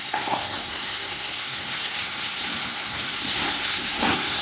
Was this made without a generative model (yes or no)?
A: no